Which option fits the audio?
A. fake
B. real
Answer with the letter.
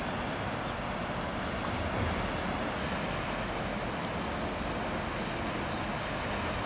B